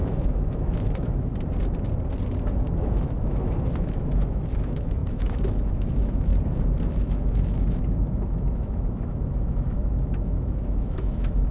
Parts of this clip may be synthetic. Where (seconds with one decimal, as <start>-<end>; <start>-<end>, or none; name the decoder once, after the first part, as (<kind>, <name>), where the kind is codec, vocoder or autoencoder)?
0.0-1.3 (autoencoder, DAC-VAE); 2.8-6.3; 6.9-11.5